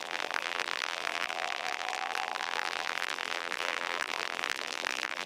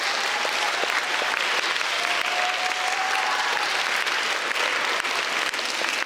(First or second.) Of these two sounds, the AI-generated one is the first